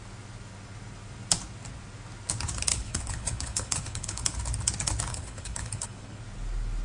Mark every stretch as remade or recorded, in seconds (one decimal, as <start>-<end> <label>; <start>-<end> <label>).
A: 0.0-2.7 recorded; 2.7-4.4 remade; 4.4-5.1 recorded; 5.1-6.2 remade; 6.2-6.8 recorded